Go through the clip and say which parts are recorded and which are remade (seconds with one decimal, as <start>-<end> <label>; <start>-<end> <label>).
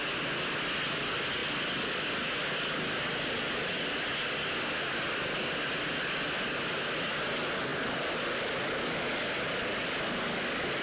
0.0-10.8 recorded